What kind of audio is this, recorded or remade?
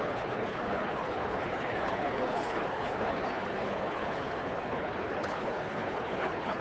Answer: remade